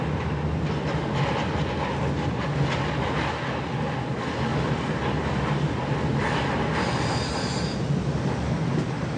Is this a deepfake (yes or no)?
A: no